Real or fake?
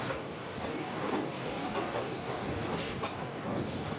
fake